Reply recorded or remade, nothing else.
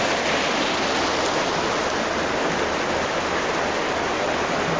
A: recorded